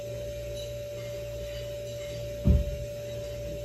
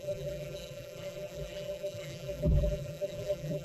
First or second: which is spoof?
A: second